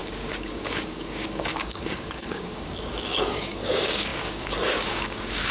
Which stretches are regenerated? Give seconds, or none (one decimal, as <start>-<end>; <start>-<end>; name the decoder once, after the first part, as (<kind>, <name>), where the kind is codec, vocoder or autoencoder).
0.0-5.5 (codec, DAC)